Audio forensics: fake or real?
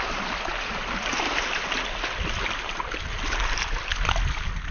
real